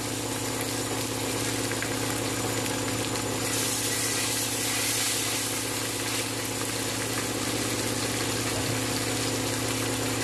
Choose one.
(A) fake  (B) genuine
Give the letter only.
B